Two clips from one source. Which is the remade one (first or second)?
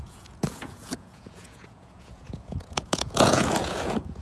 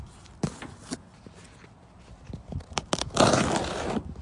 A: first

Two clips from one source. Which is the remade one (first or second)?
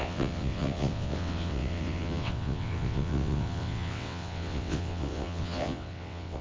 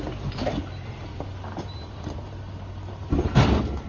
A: first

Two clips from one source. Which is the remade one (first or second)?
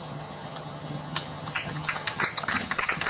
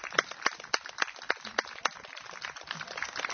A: first